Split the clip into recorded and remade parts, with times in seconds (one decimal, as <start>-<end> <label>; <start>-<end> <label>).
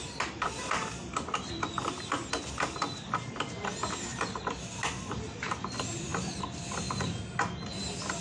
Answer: 0.0-8.2 recorded